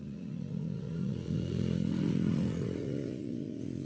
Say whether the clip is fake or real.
fake